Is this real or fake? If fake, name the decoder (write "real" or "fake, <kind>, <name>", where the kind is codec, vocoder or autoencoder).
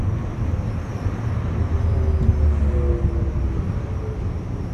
real